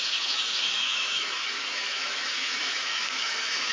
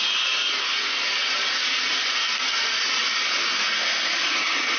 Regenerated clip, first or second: first